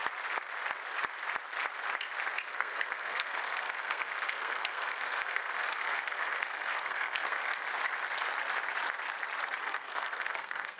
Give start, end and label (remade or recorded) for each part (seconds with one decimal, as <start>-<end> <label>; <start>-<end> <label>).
0.0-2.5 recorded; 2.5-7.6 remade; 7.6-9.6 recorded; 9.6-10.8 remade